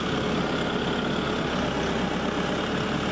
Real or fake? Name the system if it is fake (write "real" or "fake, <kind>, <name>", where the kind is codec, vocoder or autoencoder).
real